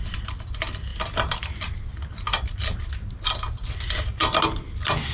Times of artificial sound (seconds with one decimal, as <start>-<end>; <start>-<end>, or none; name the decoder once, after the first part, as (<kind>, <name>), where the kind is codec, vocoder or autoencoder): none